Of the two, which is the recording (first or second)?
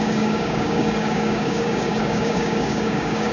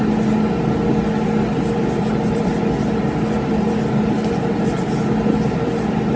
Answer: second